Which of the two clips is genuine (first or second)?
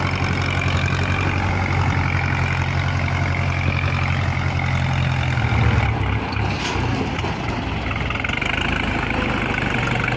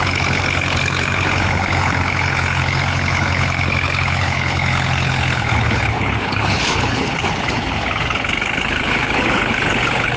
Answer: first